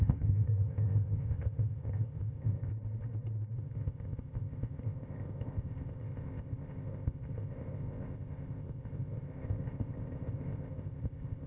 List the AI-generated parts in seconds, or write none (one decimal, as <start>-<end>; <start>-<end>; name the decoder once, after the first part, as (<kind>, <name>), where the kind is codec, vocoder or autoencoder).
0.0-2.7 (codec, ZipCodec); 3.6-11.5